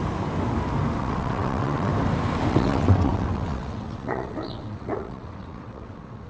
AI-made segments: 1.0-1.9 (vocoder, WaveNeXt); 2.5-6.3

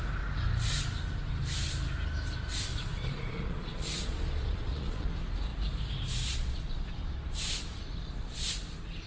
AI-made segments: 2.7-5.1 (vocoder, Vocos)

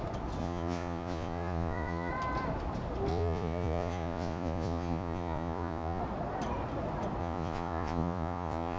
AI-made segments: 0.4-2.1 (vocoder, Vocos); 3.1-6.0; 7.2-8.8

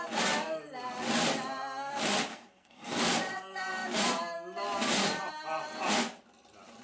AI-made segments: 2.3-3.0 (codec, SNAC)

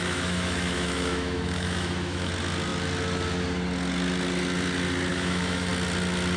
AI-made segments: 0.0-2.3 (autoencoder, DAC-VAE); 5.1-5.7

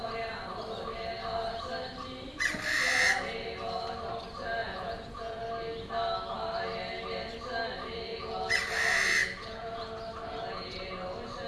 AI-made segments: 4.6-5.4 (vocoder, Vocos); 8.1-8.7; 9.2-9.8